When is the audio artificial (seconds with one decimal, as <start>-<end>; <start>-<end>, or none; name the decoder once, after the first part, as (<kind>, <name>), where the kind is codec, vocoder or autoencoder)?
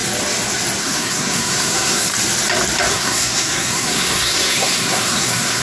0.8-2.1 (codec, SNAC); 2.9-5.6